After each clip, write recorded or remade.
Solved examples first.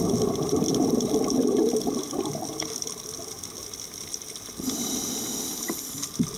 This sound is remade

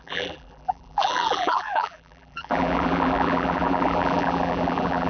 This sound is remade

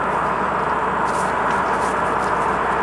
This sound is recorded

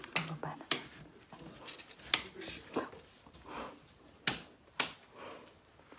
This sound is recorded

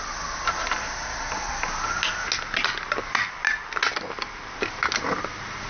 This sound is recorded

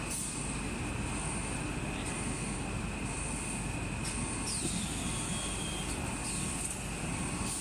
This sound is recorded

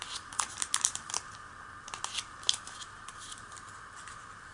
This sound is recorded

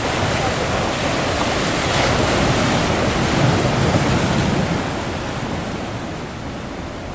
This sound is recorded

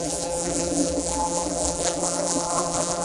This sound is remade